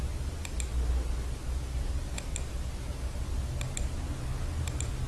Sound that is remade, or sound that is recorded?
recorded